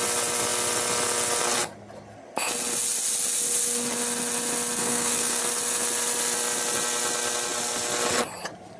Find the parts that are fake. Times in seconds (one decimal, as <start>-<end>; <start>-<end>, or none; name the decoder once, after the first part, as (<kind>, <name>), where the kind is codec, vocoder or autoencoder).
4.8-5.4 (codec, SNAC)